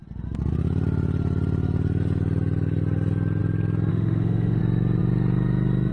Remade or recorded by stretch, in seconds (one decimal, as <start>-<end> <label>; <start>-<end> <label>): 0.0-3.9 recorded; 3.9-4.6 remade; 4.6-5.9 recorded